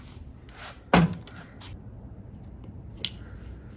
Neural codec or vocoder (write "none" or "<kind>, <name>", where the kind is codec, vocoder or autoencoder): none